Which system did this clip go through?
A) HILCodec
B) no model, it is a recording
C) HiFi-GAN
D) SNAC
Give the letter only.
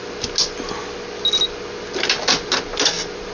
B